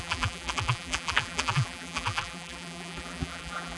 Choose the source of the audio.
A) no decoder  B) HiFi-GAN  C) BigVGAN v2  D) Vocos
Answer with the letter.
C